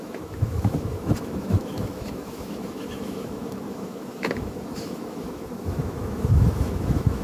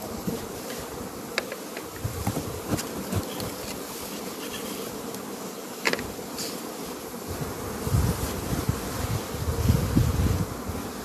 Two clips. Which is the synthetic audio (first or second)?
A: first